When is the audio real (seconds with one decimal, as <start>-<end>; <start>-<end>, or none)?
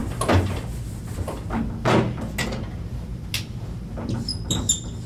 0.0-5.1